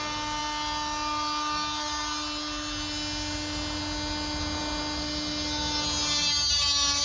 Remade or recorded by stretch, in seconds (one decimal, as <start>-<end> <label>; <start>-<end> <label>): 0.0-7.0 recorded